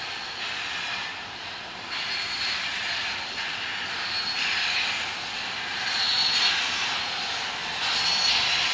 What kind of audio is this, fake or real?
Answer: real